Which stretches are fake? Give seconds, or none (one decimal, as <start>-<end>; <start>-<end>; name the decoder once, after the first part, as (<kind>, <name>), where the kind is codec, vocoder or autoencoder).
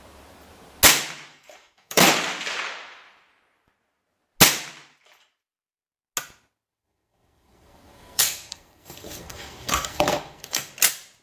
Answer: 1.3-2.1 (codec, SNAC); 6.8-10.7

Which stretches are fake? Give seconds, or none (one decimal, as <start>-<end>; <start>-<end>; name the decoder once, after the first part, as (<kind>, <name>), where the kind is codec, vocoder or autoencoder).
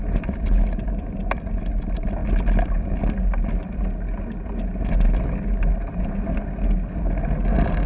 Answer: none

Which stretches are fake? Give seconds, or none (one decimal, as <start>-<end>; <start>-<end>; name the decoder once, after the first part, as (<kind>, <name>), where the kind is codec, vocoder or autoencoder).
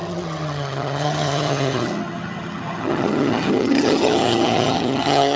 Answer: 0.0-5.4 (vocoder, HiFi-GAN)